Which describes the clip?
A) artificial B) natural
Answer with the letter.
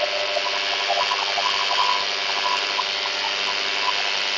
B